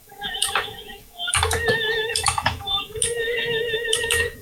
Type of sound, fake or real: fake